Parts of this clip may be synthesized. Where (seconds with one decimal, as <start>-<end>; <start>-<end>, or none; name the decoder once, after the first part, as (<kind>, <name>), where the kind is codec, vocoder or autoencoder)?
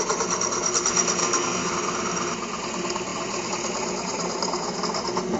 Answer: 1.2-1.7 (codec, SNAC)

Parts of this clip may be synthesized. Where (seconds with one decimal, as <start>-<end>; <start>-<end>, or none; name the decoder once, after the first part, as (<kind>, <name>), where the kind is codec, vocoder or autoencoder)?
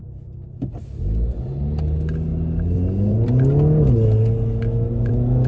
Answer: none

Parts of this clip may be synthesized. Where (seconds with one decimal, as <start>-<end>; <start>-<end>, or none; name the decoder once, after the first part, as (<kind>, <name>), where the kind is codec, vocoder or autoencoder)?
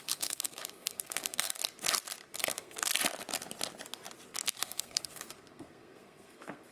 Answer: 0.0-1.6 (codec, SNAC); 2.4-2.9; 4.6-6.7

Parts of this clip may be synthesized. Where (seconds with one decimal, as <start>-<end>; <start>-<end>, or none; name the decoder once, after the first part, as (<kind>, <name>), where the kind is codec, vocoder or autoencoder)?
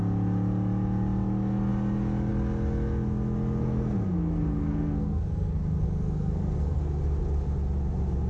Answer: 3.6-6.8 (codec, SNAC)